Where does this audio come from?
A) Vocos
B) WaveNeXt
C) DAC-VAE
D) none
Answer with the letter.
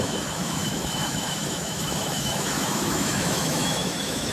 C